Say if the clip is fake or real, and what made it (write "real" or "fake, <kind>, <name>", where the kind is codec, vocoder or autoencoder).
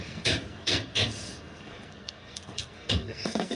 fake, codec, SNAC